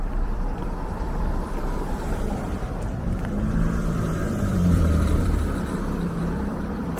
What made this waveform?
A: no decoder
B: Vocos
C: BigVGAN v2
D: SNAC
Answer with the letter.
C